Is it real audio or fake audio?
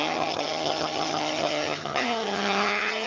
fake